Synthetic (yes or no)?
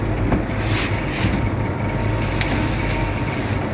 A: no